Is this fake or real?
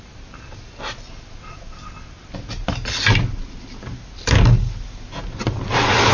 real